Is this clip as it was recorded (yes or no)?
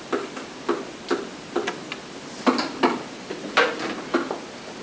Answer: no